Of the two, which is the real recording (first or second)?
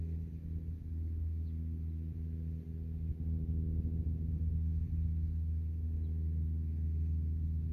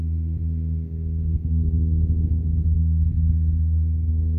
first